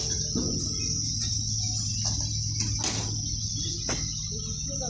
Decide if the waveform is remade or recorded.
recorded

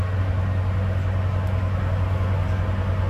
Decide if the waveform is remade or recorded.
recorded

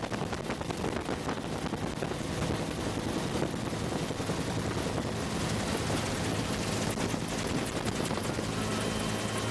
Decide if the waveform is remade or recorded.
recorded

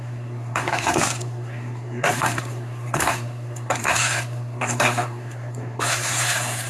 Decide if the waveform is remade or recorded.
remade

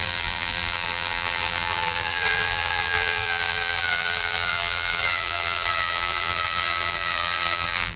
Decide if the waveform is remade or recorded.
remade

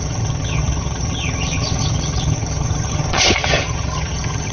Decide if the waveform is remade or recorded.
remade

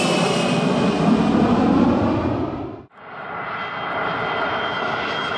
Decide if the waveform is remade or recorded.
recorded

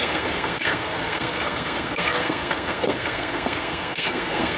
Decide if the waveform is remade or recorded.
remade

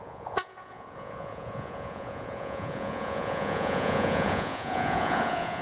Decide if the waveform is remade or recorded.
remade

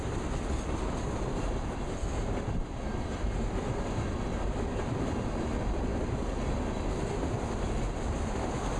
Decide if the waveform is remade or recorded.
recorded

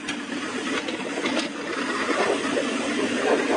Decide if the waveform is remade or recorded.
recorded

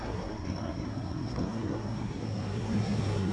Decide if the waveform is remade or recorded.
remade